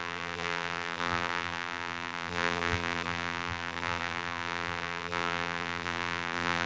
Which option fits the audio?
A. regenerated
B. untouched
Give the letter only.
A